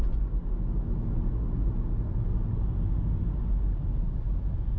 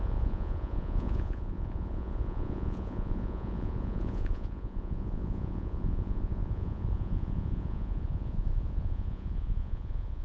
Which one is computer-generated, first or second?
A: second